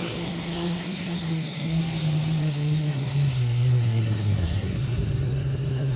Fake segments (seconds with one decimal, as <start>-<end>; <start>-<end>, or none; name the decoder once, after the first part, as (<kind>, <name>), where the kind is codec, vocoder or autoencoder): 0.0-1.8 (codec, SNAC); 2.4-6.0